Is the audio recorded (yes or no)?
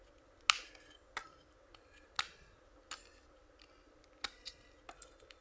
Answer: yes